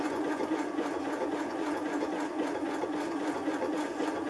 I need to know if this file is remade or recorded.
remade